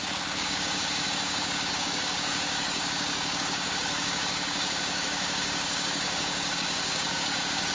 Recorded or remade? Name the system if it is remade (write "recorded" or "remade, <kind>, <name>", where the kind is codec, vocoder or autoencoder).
remade, codec, DAC